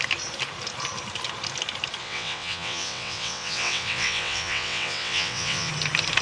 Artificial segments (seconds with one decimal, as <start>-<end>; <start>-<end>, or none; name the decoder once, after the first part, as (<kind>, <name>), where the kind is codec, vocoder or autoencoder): 2.0-5.7 (vocoder, WaveNeXt)